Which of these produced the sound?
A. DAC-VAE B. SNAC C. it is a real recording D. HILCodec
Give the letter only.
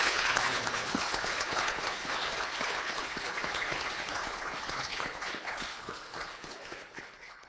D